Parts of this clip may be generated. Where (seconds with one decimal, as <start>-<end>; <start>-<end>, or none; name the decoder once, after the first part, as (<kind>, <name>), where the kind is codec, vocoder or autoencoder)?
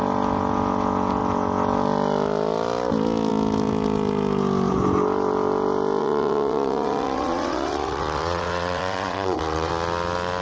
6.0-9.7 (vocoder, WaveNeXt)